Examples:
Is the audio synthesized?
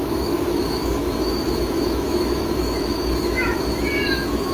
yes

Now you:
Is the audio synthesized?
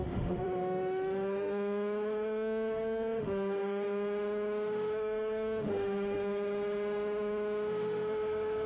yes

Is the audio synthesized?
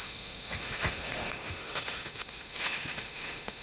yes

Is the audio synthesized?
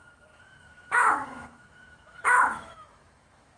yes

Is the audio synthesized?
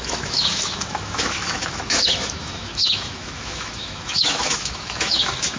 yes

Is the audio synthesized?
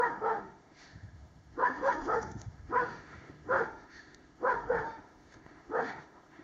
yes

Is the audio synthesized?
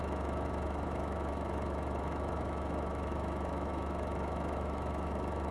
yes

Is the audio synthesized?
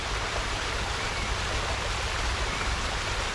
no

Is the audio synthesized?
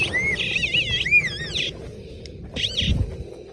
no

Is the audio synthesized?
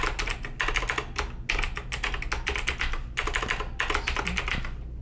no